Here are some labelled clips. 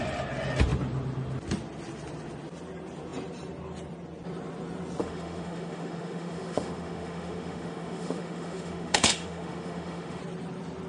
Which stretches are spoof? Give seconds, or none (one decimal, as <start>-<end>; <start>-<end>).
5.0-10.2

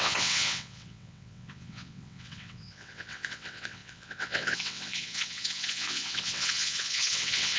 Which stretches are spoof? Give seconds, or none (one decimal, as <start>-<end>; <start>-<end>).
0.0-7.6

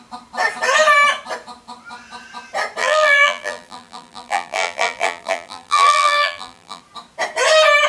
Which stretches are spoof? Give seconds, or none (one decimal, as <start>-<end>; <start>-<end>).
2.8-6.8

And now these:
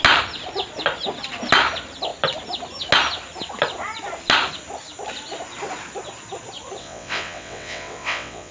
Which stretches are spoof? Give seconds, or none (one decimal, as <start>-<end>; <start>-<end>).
6.8-8.5